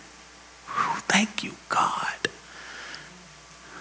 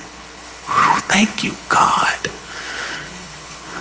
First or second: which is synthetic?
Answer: second